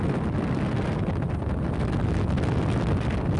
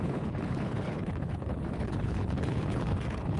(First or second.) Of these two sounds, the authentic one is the first